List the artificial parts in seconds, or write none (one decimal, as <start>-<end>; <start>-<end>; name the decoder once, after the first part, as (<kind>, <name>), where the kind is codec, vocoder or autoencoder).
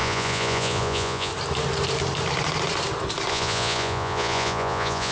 0.0-1.3 (vocoder, Vocos); 3.3-5.1